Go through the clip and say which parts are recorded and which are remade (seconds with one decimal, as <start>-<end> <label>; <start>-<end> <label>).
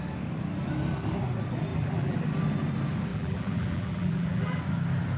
0.0-1.7 recorded; 1.7-2.2 remade; 2.2-3.1 recorded; 3.1-4.6 remade; 4.6-5.2 recorded